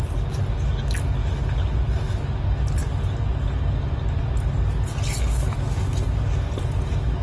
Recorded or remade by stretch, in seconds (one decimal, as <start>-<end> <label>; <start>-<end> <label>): 0.0-7.2 recorded